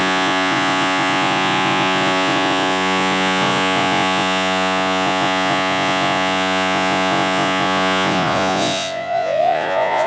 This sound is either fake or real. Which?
fake